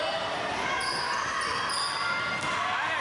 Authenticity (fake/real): real